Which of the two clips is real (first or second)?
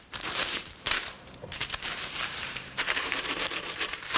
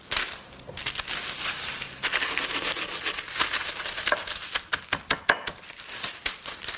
second